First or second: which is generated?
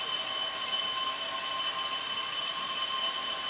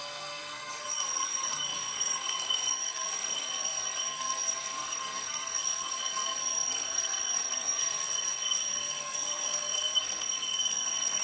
second